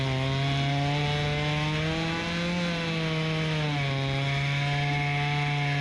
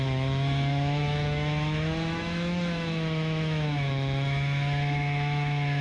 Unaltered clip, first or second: first